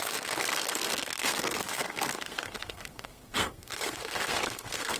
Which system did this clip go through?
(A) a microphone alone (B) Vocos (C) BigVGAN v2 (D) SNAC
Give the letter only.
D